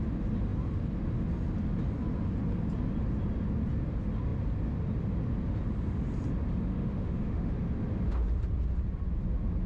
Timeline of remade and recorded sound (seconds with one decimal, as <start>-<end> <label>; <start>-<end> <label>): 0.0-6.7 recorded; 6.7-7.5 remade; 7.5-9.7 recorded